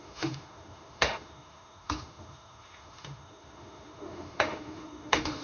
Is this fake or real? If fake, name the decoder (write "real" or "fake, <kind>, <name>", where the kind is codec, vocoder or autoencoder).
fake, autoencoder, DAC-VAE